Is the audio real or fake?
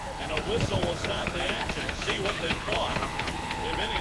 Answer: fake